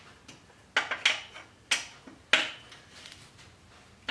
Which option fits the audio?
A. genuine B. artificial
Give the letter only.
A